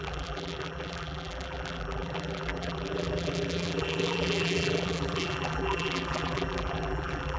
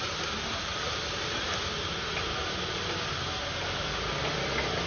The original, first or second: second